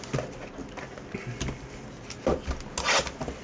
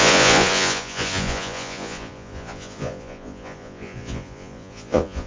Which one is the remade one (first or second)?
second